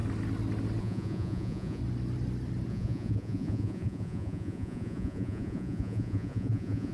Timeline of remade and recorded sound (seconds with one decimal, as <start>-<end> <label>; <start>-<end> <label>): 0.0-0.8 recorded; 0.8-1.8 remade; 1.8-2.7 recorded; 2.7-6.9 remade